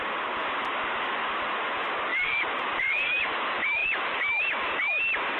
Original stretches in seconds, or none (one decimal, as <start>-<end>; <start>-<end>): 0.0-2.1; 3.4-3.8; 4.6-5.4